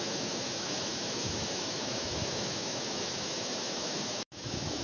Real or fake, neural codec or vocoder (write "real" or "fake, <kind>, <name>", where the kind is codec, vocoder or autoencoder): fake, autoencoder, DAC-VAE